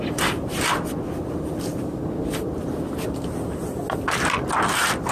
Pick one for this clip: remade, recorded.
recorded